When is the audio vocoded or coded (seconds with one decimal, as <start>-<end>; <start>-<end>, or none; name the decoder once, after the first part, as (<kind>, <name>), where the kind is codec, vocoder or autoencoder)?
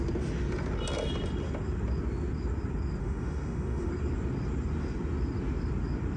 3.0-3.9 (autoencoder, DAC-VAE)